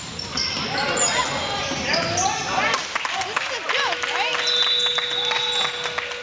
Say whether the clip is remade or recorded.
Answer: recorded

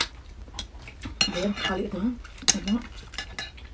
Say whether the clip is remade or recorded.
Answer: recorded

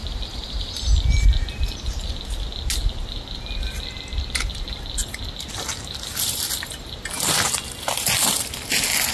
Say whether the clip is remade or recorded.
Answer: recorded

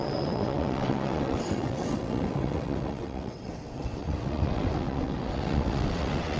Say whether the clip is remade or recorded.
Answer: remade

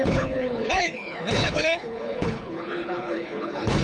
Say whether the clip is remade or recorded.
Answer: remade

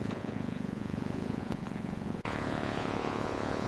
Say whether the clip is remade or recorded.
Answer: remade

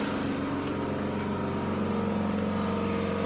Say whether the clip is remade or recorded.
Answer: recorded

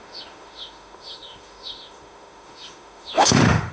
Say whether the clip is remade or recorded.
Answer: remade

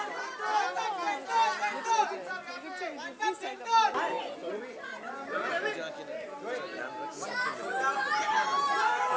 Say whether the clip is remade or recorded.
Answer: recorded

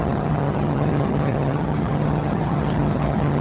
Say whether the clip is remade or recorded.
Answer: remade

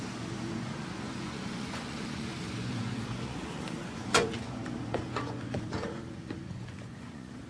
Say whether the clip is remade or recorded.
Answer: remade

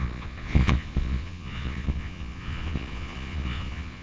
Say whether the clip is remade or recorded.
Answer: remade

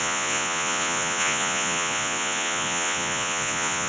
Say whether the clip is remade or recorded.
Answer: remade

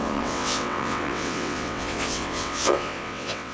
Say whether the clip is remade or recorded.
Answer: remade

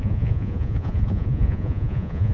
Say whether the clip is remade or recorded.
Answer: remade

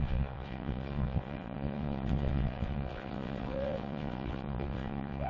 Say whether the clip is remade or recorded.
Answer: remade